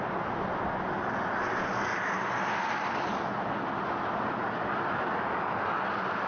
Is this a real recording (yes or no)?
yes